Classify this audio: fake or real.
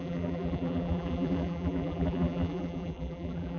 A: fake